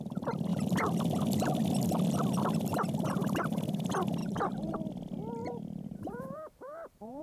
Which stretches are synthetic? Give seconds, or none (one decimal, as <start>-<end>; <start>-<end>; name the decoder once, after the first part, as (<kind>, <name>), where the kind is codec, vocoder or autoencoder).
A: 4.2-4.7 (vocoder, BigVGAN v2); 5.4-7.2